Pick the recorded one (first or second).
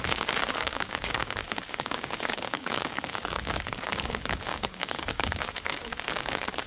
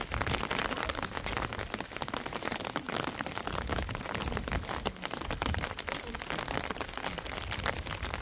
second